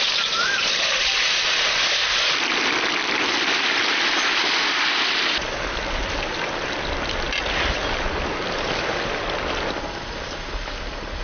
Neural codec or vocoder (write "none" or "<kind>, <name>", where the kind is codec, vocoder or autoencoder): none